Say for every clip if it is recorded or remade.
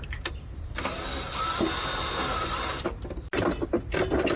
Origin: recorded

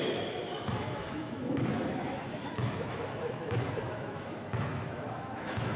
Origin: remade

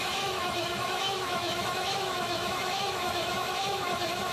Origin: remade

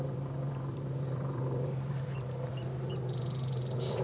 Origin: remade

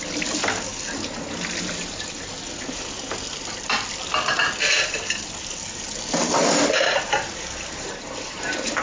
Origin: recorded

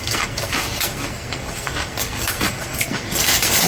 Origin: remade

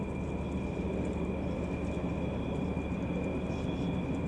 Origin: recorded